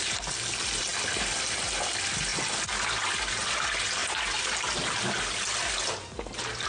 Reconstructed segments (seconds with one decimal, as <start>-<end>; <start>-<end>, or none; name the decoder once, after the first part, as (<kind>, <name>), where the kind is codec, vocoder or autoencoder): none

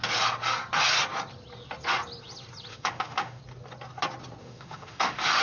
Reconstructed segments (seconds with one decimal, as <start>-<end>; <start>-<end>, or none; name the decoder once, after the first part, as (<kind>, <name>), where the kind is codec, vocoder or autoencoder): 2.7-3.4 (autoencoder, DAC-VAE); 4.4-5.4